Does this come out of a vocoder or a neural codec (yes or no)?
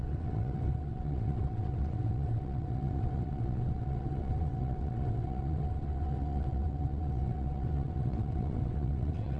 yes